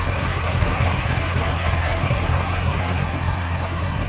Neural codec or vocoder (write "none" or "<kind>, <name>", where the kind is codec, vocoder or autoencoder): codec, SNAC